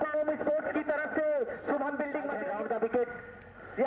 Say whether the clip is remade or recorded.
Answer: recorded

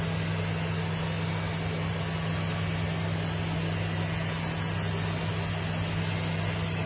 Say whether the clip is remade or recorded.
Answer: recorded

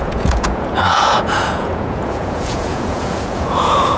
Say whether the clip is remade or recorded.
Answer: remade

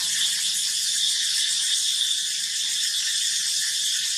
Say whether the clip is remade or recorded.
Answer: recorded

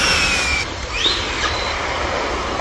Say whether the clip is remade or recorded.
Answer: recorded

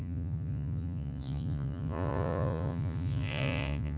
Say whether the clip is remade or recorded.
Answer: remade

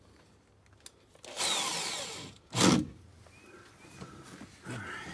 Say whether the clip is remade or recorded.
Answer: recorded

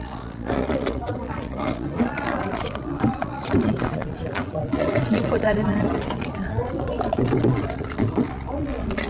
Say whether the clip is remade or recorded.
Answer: remade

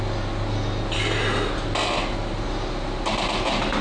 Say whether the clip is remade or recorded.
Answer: recorded